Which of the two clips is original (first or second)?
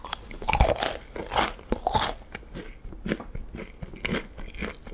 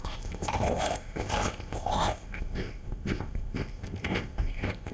first